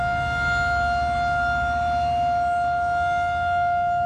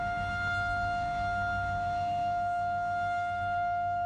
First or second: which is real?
first